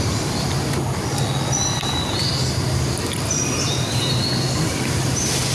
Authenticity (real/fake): real